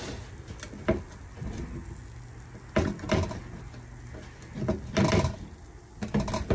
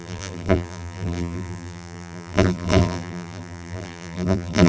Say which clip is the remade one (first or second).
second